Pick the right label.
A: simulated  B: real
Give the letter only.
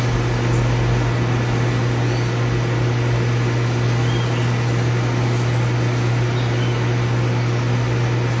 B